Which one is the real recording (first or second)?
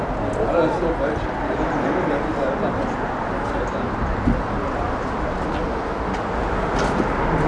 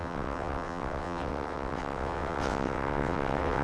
first